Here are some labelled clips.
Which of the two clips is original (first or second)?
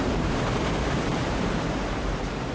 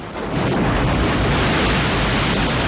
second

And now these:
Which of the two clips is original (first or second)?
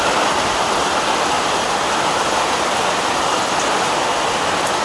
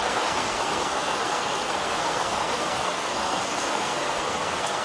first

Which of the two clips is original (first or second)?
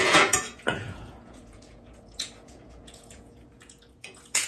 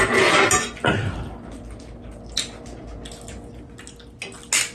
second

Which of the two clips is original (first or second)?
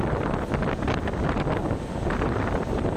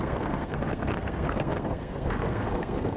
first